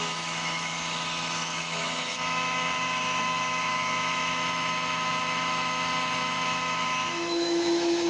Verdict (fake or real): fake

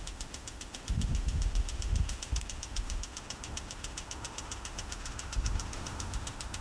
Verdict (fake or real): fake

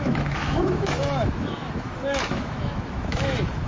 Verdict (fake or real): fake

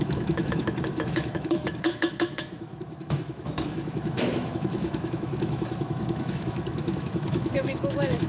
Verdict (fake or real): fake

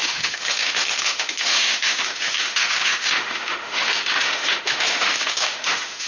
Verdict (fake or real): fake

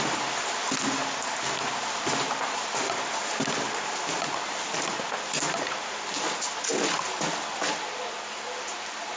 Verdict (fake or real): real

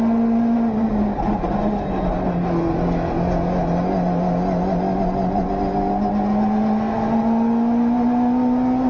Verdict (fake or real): real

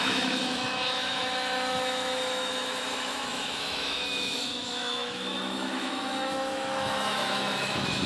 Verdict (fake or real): fake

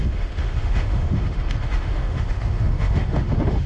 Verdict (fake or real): fake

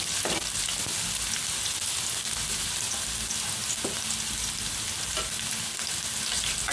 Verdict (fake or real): real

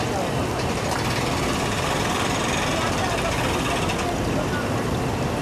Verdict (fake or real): real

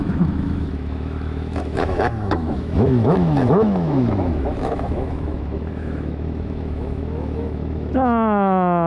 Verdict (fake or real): fake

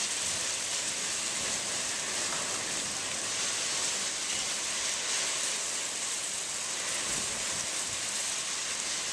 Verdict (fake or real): real